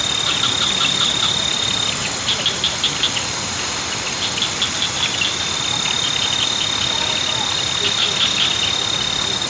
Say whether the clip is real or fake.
real